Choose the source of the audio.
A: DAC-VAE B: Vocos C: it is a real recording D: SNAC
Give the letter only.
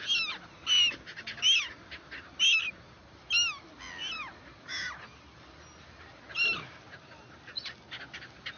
C